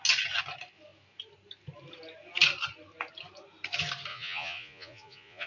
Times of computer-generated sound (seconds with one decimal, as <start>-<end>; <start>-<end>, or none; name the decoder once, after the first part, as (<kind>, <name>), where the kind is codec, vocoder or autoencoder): 4.1-5.5 (vocoder, Vocos)